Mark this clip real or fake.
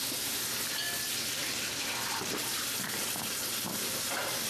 real